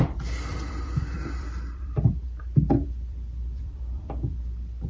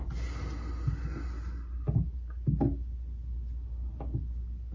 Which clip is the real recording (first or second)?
second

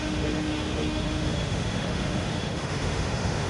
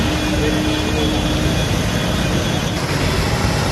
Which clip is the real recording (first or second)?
second